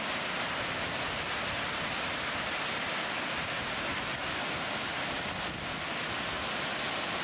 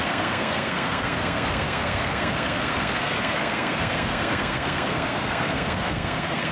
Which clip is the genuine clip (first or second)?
first